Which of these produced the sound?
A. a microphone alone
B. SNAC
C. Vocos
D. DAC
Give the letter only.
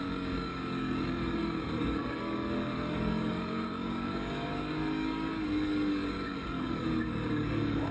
D